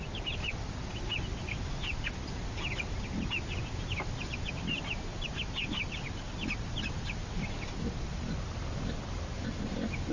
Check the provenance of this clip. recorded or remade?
recorded